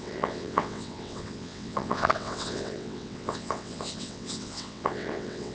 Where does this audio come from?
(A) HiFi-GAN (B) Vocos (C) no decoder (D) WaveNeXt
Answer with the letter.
D